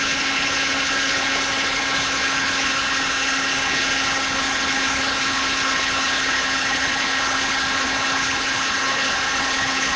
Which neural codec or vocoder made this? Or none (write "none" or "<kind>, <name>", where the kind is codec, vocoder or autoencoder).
codec, HILCodec